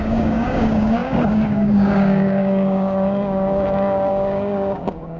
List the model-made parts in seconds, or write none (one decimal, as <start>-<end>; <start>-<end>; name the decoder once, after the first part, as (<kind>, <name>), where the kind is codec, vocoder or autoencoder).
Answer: 0.0-5.2 (codec, DAC)